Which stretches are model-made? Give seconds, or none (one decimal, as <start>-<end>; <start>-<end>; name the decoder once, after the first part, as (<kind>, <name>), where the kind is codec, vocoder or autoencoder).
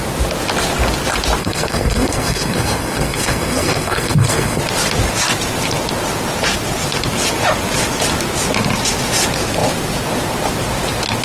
1.4-4.6 (codec, SNAC)